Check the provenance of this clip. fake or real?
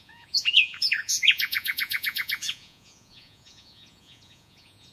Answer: fake